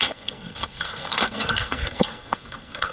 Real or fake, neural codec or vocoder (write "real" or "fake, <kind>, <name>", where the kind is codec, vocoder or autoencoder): fake, codec, SNAC